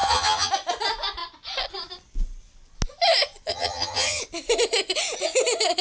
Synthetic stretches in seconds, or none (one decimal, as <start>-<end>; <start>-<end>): 0.0-0.5; 3.5-4.2